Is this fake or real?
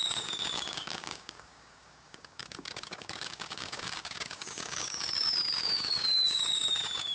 fake